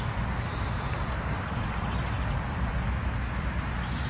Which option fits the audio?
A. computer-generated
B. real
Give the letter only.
B